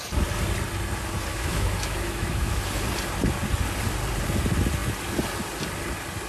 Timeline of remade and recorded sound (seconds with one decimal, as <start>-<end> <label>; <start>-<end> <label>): 0.0-1.3 recorded; 1.3-2.6 remade; 2.6-6.3 recorded